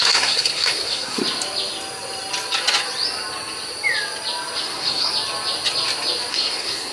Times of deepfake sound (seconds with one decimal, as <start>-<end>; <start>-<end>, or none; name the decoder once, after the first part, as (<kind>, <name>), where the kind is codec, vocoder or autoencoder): 0.0-1.2 (codec, SNAC); 4.6-5.1; 6.3-6.9

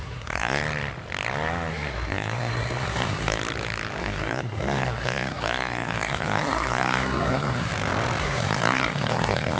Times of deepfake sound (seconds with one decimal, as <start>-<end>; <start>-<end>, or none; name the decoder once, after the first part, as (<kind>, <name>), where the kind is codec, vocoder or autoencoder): 0.0-0.6 (codec, SNAC); 1.7-3.4; 4.0-7.7; 8.2-9.6